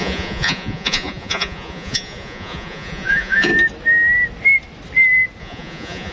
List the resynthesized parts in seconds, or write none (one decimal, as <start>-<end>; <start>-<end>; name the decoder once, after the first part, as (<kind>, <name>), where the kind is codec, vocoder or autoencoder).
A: 0.0-3.5 (vocoder, Vocos); 5.4-6.1

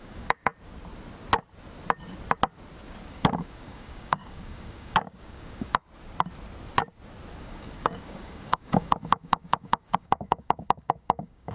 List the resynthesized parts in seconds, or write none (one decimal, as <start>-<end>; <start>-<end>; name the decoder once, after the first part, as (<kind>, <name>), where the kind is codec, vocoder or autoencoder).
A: 0.0-0.5 (codec, DAC); 3.1-5.7; 7.4-11.5

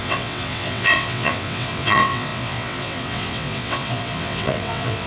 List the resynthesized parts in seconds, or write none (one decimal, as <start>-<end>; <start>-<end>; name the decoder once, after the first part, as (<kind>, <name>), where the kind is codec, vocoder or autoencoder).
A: 0.0-5.1 (vocoder, WaveNeXt)

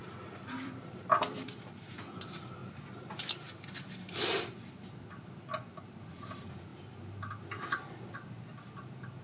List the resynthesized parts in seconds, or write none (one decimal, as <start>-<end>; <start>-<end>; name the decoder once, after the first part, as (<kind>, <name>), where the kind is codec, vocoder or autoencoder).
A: 0.0-1.9 (vocoder, BigVGAN v2)

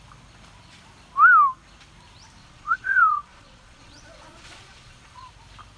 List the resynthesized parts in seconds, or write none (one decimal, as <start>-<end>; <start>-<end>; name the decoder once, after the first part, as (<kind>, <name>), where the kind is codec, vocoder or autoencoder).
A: 2.4-5.3 (vocoder, Vocos)

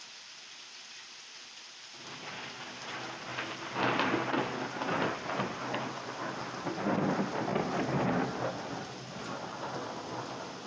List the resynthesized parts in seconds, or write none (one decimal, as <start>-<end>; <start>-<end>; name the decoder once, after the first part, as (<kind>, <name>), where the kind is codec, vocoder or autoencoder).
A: none

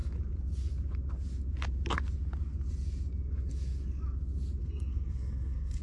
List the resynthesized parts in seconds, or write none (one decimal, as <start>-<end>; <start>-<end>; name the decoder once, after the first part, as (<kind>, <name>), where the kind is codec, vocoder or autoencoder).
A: 4.6-5.8 (codec, SNAC)